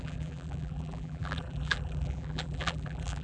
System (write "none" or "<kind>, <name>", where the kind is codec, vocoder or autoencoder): vocoder, BigVGAN v2